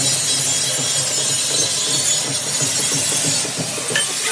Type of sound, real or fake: real